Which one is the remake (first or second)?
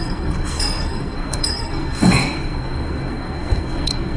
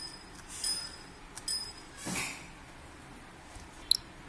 first